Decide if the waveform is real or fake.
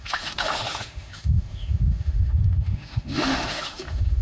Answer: fake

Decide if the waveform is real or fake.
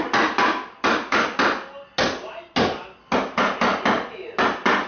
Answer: real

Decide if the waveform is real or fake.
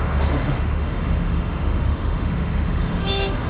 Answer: fake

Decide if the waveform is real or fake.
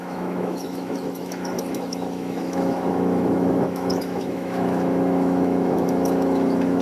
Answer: fake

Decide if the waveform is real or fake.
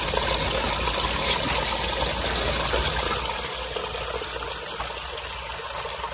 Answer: real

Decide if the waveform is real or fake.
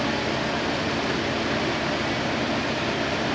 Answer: real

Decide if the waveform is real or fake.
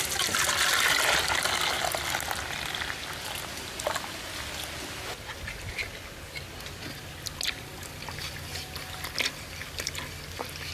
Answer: real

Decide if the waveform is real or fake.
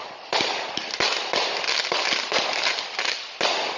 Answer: real